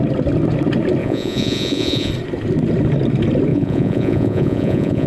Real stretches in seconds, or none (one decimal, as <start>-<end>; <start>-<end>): 0.0-1.0; 2.1-3.5